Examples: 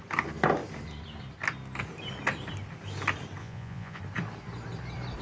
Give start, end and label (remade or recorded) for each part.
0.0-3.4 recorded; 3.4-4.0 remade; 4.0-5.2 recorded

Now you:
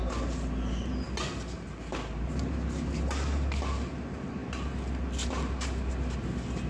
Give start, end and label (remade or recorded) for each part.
0.0-6.7 recorded

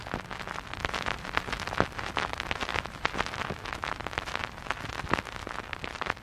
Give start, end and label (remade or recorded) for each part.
0.0-6.2 recorded

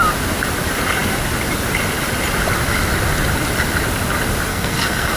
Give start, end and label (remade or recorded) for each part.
0.0-4.5 recorded; 4.5-5.2 remade

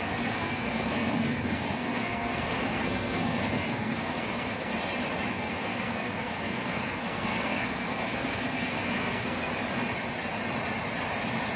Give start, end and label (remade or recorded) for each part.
0.0-4.7 remade; 4.7-5.3 recorded; 5.3-9.5 remade; 9.5-11.6 recorded

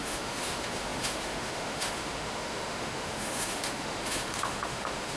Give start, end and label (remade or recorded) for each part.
0.0-5.2 remade

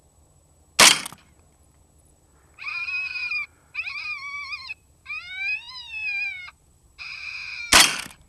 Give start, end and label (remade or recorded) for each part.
0.0-3.3 recorded; 3.3-6.9 remade; 6.9-8.3 recorded

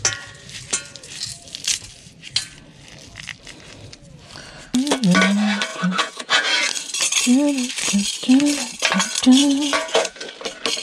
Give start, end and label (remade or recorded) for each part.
0.0-5.7 recorded; 5.7-6.5 remade; 6.5-9.4 recorded; 9.4-10.3 remade; 10.3-10.8 recorded